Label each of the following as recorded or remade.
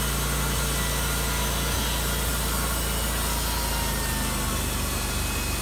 recorded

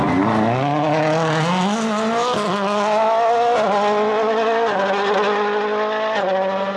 recorded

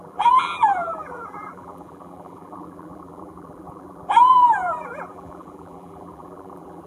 remade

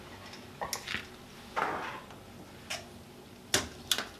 recorded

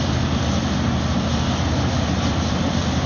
remade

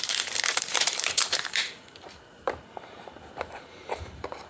remade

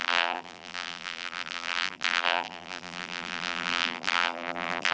remade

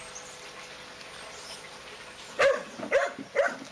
recorded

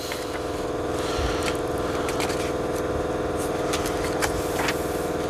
recorded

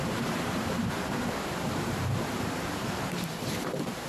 remade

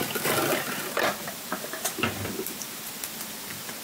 recorded